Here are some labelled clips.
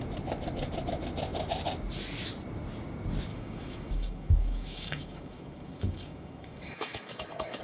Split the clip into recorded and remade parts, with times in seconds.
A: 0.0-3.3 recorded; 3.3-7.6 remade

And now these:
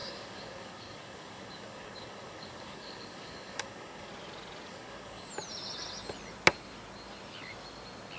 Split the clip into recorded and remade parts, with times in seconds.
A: 0.0-4.1 remade; 4.1-4.7 recorded; 4.7-5.3 remade; 5.3-8.2 recorded

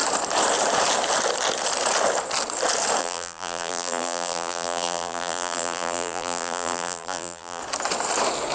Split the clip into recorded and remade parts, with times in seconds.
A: 0.0-3.0 recorded; 3.0-7.6 remade; 7.6-8.5 recorded

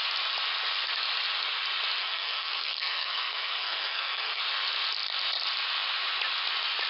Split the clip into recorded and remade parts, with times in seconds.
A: 0.0-2.0 recorded; 2.0-4.4 remade; 4.4-6.9 recorded

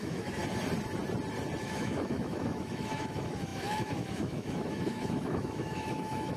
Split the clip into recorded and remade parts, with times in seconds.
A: 0.0-0.4 remade; 0.4-1.6 recorded; 1.6-6.4 remade